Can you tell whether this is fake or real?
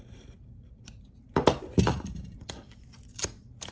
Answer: fake